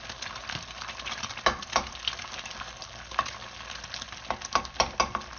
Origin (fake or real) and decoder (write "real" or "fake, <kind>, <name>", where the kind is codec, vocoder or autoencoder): real